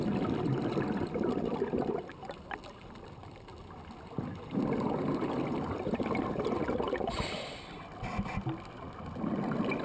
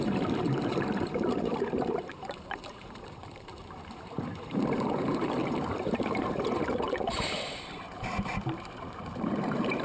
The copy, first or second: second